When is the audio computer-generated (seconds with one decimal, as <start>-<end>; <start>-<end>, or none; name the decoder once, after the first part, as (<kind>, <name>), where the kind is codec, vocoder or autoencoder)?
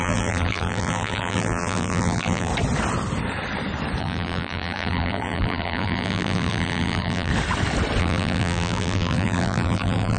0.0-2.5 (vocoder, BigVGAN v2); 4.0-7.3; 8.0-10.2